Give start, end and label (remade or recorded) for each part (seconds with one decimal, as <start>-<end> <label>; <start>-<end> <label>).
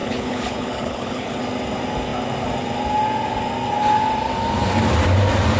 0.0-1.4 remade; 1.4-5.6 recorded